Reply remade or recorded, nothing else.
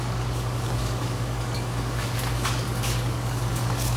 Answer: remade